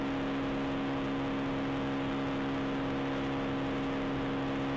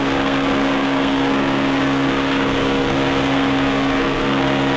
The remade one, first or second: second